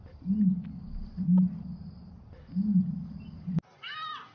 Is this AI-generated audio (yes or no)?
no